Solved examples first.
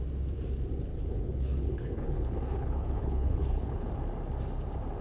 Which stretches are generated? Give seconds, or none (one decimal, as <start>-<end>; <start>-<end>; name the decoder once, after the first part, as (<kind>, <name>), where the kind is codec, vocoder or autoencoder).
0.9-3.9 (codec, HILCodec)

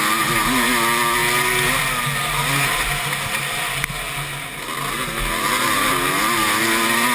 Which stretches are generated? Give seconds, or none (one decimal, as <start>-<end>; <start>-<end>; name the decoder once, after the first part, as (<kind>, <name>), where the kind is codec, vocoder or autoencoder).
none

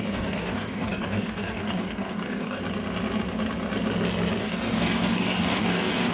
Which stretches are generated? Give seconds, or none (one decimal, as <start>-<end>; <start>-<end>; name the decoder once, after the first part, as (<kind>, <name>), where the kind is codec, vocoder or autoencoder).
0.0-2.6 (codec, DAC); 4.4-6.1